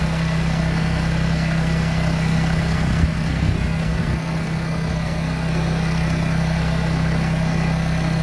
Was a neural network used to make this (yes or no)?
yes